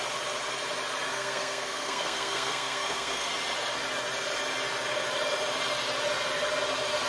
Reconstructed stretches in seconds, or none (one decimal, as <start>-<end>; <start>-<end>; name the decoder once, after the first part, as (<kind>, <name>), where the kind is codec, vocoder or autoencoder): 1.1-3.3 (codec, SNAC)